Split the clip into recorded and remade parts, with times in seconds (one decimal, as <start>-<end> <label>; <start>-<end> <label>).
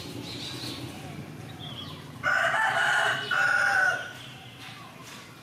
0.0-5.4 recorded